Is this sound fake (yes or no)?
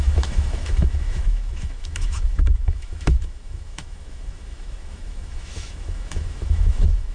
yes